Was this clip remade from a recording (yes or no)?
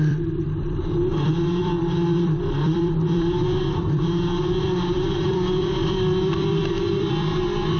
yes